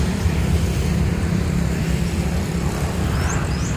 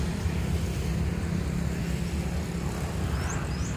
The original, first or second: second